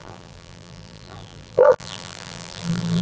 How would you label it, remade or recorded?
remade